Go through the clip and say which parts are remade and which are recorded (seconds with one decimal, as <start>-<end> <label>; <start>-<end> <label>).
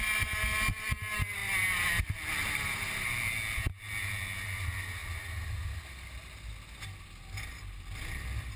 0.0-2.4 recorded; 2.4-3.1 remade; 3.1-8.6 recorded